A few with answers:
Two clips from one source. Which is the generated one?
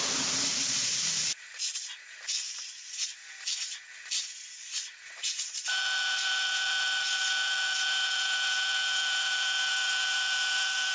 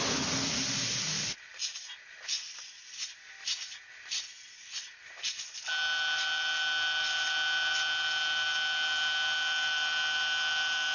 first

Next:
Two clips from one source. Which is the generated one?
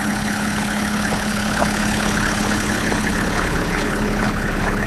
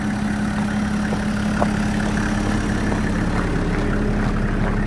first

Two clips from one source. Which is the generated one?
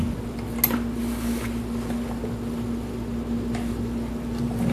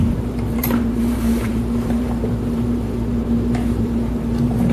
second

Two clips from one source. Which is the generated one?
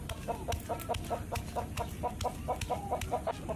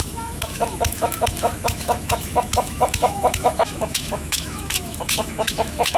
second